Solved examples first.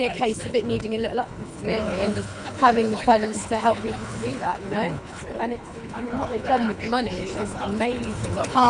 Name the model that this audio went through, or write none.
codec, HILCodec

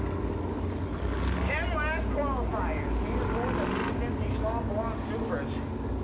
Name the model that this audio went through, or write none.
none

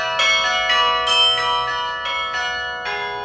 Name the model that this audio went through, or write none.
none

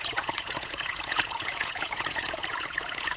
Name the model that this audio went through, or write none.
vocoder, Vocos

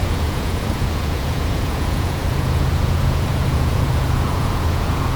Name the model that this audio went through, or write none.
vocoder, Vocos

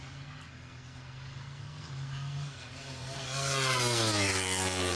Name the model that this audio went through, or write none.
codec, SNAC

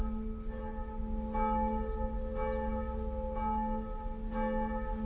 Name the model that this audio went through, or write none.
none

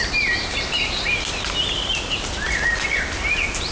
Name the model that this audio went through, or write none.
none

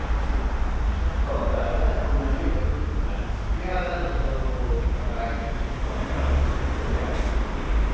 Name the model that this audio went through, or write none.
none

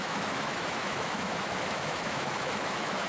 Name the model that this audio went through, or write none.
autoencoder, DAC-VAE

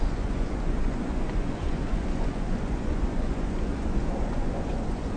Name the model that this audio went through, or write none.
vocoder, Vocos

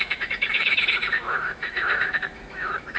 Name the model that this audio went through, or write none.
autoencoder, DAC-VAE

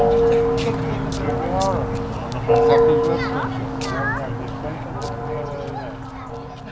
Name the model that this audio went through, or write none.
none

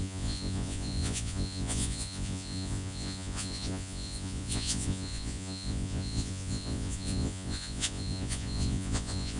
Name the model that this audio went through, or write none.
vocoder, Vocos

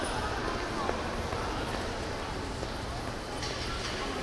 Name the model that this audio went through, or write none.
none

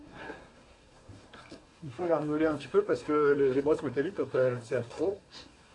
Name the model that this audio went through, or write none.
codec, SNAC